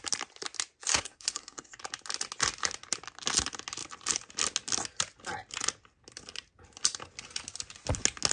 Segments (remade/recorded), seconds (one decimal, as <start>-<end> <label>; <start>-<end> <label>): 0.0-0.9 recorded; 0.9-1.8 remade; 1.8-8.3 recorded